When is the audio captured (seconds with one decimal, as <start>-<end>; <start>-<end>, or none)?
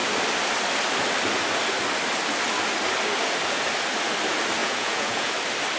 0.0-4.6; 5.3-5.8